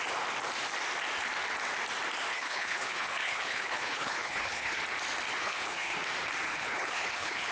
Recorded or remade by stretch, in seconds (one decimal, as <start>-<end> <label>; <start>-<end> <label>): 0.0-2.3 recorded; 2.3-4.8 remade; 4.8-5.4 recorded; 5.4-6.0 remade; 6.0-6.5 recorded; 6.5-7.5 remade